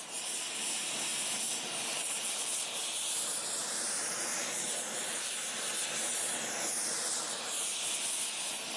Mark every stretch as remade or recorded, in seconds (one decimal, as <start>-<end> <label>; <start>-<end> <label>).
0.0-1.1 recorded; 1.1-2.6 remade; 2.6-3.6 recorded; 3.6-5.7 remade; 5.7-8.8 recorded